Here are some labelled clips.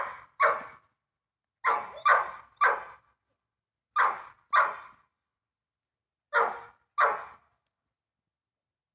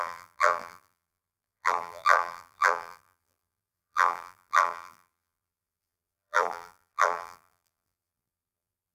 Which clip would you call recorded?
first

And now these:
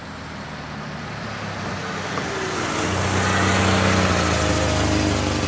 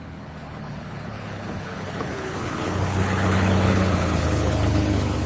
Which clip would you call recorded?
first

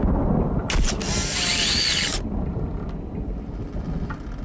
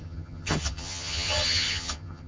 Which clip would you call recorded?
first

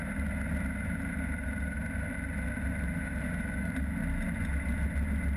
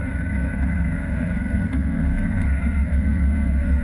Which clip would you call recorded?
first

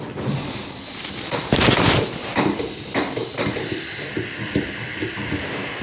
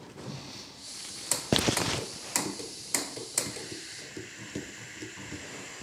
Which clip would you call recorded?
first